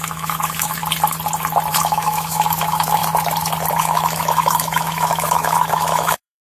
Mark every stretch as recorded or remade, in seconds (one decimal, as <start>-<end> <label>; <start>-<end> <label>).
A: 0.0-0.8 remade; 0.8-1.7 recorded; 1.7-3.0 remade; 3.0-3.7 recorded; 3.7-6.4 remade